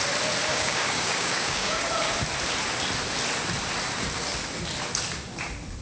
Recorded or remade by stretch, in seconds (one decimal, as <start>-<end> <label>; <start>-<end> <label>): 0.0-0.5 recorded; 0.5-1.9 remade; 1.9-5.8 recorded